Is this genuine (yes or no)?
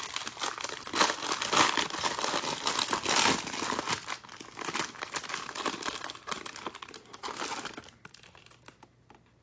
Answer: yes